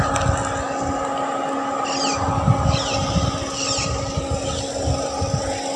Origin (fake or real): real